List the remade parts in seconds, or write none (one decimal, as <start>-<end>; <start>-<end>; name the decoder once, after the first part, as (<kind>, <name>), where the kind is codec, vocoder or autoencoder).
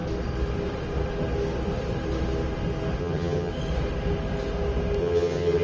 3.0-3.5 (vocoder, HiFi-GAN); 5.0-5.6